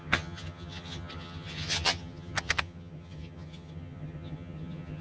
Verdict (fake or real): fake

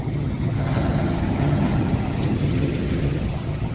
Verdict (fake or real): fake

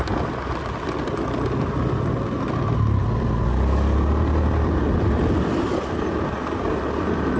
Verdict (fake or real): real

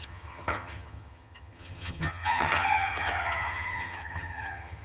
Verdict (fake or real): fake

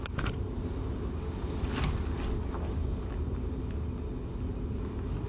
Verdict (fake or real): real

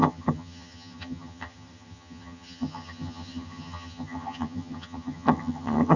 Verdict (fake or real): fake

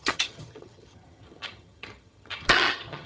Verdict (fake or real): fake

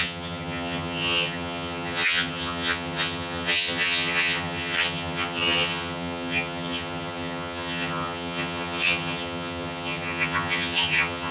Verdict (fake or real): fake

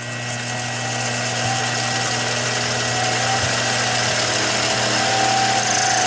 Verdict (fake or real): real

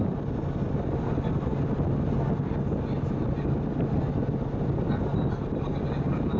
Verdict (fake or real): real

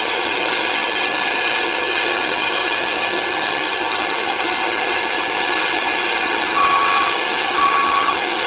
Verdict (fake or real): fake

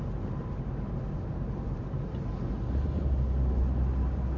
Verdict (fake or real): real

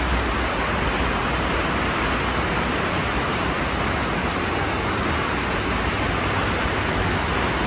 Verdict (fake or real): real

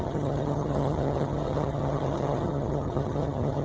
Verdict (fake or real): fake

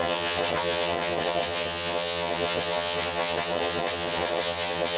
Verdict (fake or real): fake